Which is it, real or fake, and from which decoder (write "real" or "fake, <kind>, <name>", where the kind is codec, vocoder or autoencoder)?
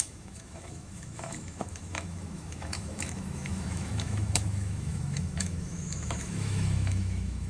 fake, autoencoder, DAC-VAE